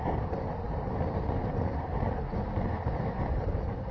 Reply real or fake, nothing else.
real